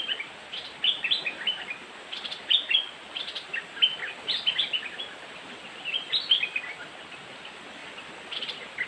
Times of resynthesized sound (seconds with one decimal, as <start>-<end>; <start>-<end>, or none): 0.0-7.8; 8.4-8.9